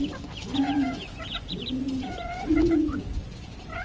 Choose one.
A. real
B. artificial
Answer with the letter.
B